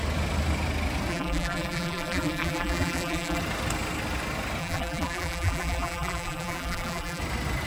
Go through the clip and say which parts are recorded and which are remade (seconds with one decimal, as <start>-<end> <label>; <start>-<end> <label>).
0.0-1.1 recorded; 1.1-3.4 remade; 3.4-4.6 recorded; 4.6-7.2 remade; 7.2-7.7 recorded